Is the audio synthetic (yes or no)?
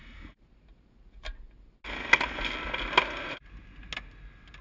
no